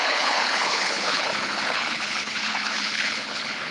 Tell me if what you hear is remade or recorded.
remade